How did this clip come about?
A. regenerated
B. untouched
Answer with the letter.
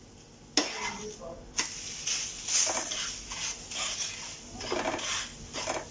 B